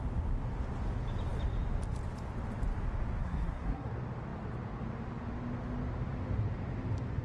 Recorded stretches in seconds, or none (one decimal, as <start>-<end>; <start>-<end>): 0.0-3.2; 3.9-7.2